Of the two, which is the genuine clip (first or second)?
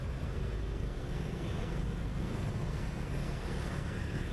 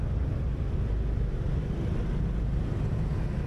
second